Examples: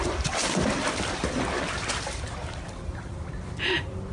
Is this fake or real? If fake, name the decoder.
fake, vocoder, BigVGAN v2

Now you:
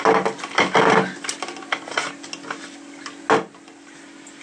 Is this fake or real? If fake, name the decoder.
real